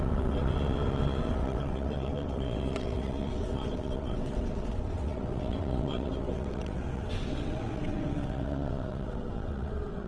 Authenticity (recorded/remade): remade